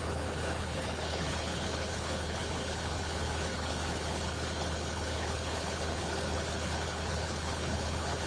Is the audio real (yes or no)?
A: no